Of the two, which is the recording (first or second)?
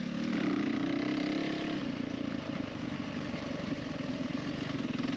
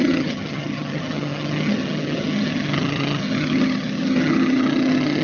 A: first